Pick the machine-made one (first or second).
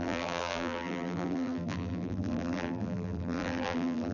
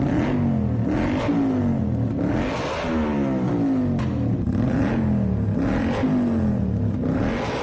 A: first